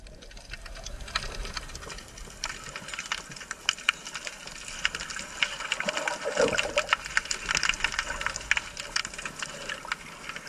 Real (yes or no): yes